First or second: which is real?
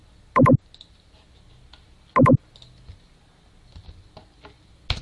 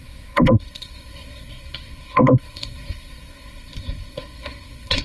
first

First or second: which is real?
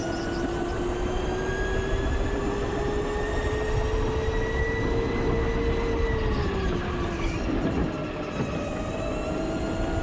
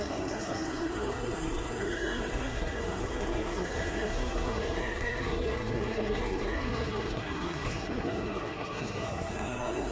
first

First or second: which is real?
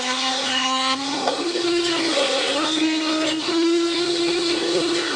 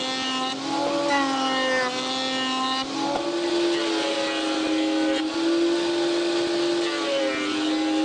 second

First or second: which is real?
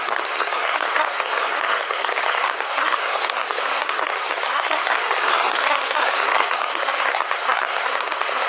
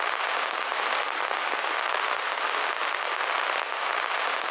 second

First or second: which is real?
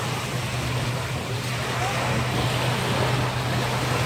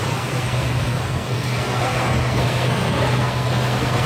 first